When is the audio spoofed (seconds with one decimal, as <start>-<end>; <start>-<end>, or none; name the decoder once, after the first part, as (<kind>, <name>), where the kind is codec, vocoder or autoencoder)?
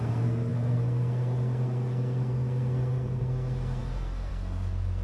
0.0-5.0 (codec, SNAC)